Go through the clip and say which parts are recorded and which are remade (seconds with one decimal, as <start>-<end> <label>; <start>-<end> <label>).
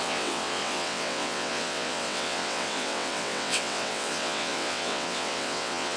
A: 0.0-6.0 remade